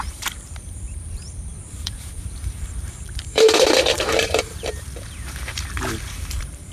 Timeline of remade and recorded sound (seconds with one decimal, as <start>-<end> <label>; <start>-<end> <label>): 0.0-6.7 remade